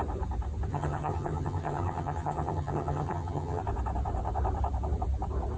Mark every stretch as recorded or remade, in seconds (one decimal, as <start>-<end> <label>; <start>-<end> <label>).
0.0-0.7 recorded; 0.7-3.6 remade; 3.6-5.6 recorded